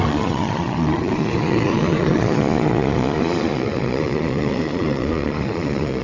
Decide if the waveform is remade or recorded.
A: remade